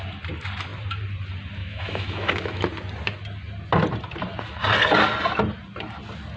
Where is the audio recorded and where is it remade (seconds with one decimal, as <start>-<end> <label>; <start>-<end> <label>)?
0.0-1.6 recorded; 1.6-2.6 remade; 2.6-6.4 recorded